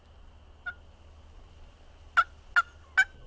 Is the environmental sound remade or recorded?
recorded